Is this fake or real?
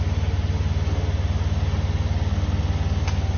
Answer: real